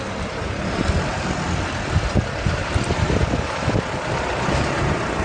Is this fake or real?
fake